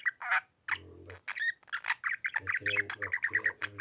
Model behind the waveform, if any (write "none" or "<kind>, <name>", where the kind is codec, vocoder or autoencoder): none